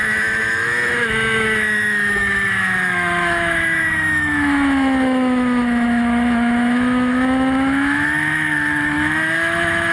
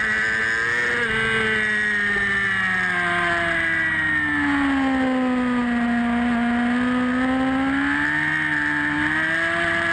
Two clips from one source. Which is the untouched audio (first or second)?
second